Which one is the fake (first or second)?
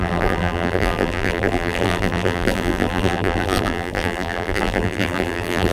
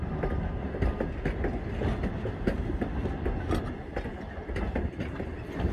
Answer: first